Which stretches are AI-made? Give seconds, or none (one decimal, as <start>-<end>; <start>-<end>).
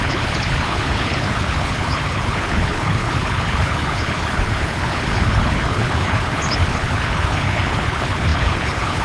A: 0.0-9.0